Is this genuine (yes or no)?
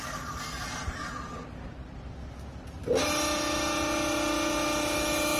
yes